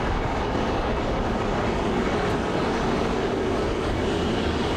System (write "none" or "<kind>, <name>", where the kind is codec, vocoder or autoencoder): codec, DAC